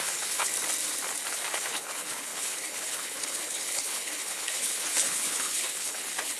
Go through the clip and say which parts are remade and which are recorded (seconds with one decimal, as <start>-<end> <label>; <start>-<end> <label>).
0.0-0.5 remade; 0.5-1.3 recorded; 1.3-6.4 remade